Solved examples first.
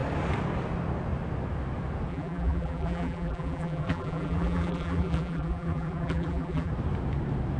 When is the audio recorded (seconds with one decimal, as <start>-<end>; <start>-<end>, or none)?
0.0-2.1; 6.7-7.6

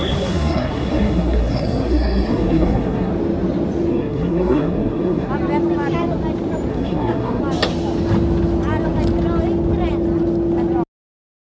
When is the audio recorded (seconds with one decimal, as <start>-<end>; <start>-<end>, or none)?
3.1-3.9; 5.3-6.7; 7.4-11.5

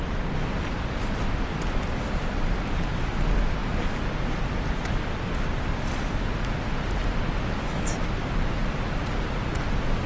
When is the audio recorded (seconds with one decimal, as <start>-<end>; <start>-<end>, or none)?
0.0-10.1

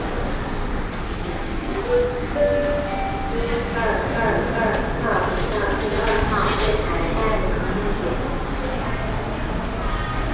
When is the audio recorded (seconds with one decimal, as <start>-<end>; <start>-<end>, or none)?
0.0-0.9; 1.8-10.3